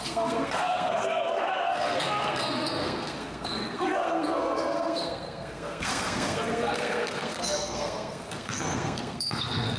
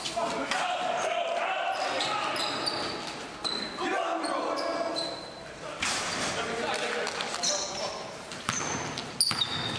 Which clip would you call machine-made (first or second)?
first